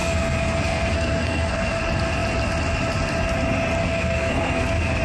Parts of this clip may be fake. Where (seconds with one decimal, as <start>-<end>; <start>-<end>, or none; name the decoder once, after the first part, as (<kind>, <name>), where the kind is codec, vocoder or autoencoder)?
0.0-1.8 (codec, SNAC); 3.8-5.0